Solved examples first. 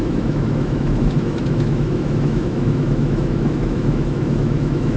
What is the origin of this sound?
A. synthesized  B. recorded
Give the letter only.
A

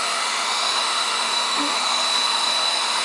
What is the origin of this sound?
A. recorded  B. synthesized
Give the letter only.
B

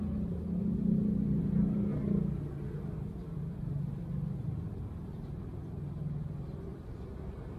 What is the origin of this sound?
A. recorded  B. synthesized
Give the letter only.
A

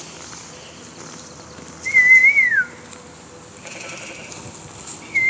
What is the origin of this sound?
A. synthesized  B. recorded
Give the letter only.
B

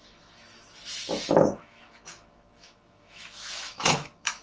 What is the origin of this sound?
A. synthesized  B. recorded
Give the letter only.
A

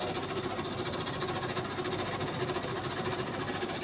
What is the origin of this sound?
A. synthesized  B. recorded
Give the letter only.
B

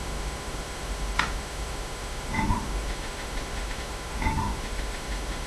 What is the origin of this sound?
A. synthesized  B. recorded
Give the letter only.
A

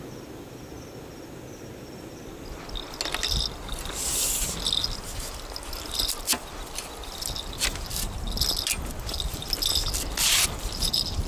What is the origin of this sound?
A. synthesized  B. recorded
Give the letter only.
B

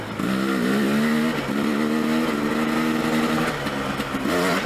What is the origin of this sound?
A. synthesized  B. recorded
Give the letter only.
B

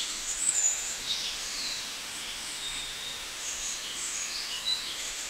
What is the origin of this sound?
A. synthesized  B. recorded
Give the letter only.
A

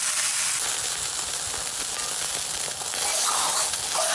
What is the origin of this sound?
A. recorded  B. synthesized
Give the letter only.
A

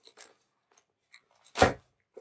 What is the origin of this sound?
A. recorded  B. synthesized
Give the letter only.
A